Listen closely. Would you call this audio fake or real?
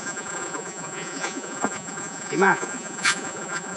fake